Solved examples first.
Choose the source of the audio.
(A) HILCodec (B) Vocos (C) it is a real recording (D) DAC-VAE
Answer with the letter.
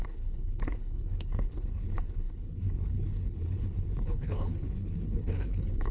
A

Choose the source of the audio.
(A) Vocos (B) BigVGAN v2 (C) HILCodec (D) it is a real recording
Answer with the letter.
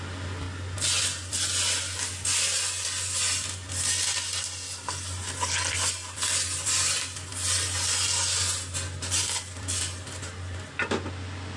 D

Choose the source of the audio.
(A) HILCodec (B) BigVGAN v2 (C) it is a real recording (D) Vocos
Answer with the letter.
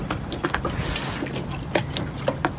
C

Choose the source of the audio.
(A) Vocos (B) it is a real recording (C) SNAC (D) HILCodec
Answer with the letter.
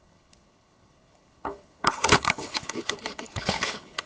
D